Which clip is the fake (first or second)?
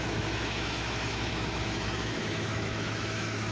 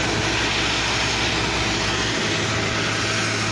first